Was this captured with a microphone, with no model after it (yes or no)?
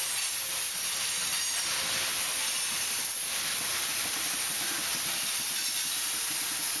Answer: yes